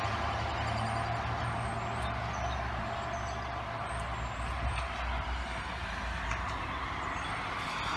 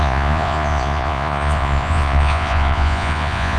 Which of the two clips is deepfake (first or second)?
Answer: second